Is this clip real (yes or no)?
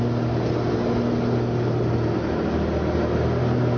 yes